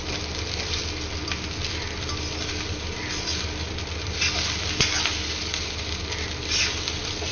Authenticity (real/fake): real